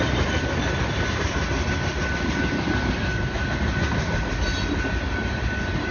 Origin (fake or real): real